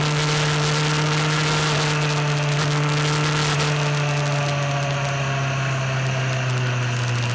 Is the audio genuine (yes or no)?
yes